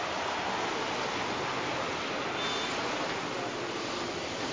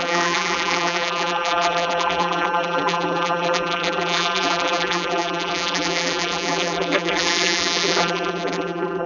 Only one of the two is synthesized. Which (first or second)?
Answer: second